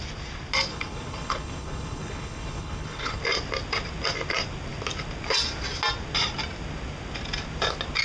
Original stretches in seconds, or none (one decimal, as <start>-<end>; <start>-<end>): 0.0-0.7; 3.2-8.0